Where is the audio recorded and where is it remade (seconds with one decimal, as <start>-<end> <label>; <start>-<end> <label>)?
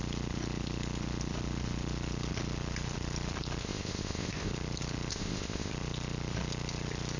0.0-3.6 recorded; 3.6-4.5 remade; 4.5-5.1 recorded; 5.1-5.7 remade; 5.7-7.2 recorded